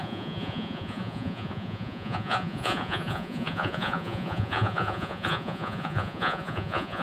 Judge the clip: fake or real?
fake